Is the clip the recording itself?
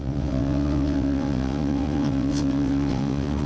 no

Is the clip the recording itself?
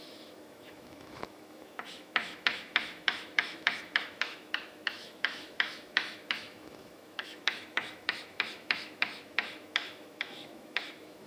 no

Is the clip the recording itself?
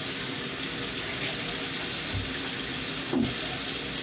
yes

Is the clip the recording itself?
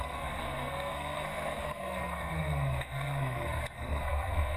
no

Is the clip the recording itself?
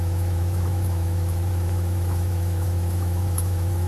no